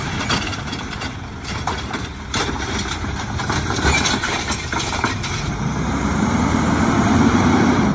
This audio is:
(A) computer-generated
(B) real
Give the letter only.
A